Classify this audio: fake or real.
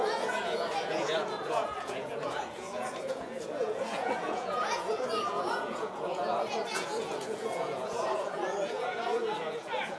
fake